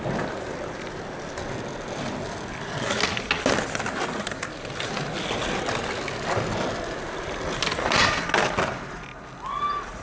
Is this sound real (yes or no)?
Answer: yes